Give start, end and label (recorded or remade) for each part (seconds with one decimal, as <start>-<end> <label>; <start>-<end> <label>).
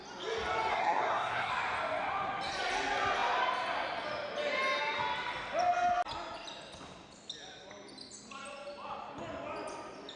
0.0-0.7 recorded; 0.7-1.5 remade; 1.5-10.2 recorded